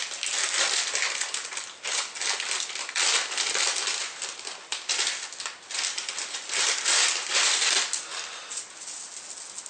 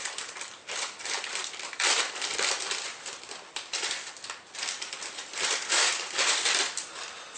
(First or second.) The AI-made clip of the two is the second